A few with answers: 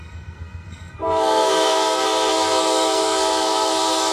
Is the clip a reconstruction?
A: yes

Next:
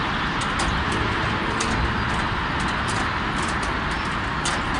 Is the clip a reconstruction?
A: no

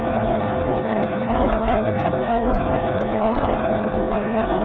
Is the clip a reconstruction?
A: yes